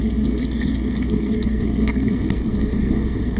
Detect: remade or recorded remade